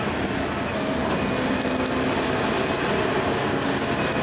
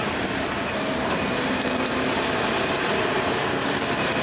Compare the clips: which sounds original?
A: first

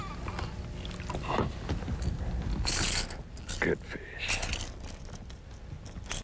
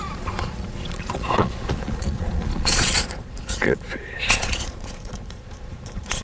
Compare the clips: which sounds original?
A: first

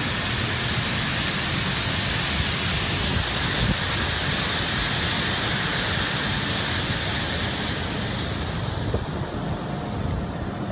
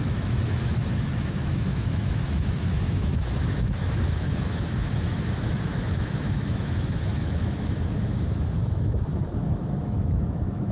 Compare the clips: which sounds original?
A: first